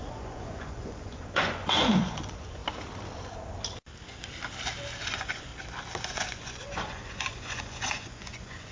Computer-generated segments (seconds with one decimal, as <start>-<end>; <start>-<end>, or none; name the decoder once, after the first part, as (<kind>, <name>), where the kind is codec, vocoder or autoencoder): 0.0-2.6 (vocoder, Vocos); 5.0-5.5; 6.1-8.7